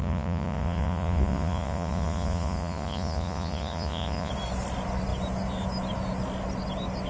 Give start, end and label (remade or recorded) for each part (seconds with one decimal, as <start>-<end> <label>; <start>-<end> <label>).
0.0-4.3 remade; 4.3-7.1 recorded